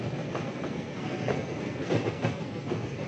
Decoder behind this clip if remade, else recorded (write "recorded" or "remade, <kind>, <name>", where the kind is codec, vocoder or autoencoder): remade, codec, SNAC